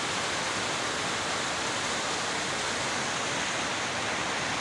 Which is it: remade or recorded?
recorded